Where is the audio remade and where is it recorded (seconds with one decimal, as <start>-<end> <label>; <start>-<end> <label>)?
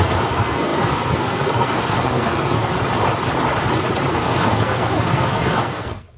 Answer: 0.0-2.7 remade; 2.7-4.1 recorded; 4.1-6.2 remade